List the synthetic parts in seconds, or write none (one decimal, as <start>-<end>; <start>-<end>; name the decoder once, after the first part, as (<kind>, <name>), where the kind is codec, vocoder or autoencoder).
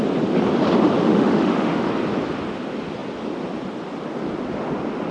1.1-1.9 (autoencoder, DAC-VAE)